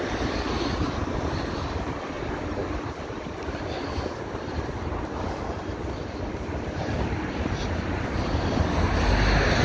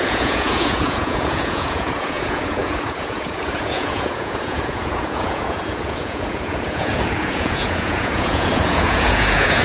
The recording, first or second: first